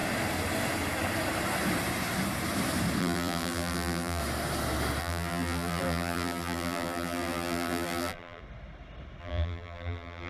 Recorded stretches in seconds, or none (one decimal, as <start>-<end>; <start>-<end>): 0.0-3.0; 4.2-5.0; 8.4-9.2